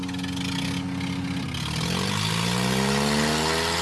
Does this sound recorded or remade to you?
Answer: recorded